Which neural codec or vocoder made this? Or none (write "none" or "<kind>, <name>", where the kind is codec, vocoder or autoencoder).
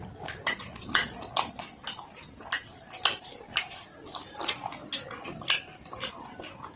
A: none